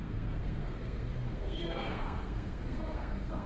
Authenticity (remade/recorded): remade